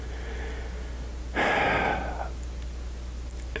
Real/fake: real